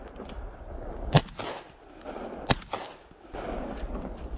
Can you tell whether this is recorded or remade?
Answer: recorded